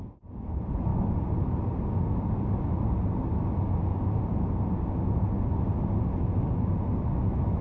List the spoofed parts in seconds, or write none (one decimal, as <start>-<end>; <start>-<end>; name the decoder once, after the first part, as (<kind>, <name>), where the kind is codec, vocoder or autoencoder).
none